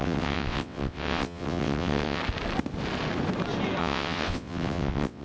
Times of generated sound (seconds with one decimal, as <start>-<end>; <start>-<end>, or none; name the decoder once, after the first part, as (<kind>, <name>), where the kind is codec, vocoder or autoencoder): 0.0-2.2 (vocoder, WaveNeXt); 3.8-5.2